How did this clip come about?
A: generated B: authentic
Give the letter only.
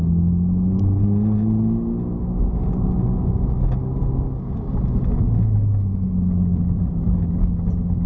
B